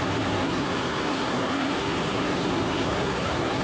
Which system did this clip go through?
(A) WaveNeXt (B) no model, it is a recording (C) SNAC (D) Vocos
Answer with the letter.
C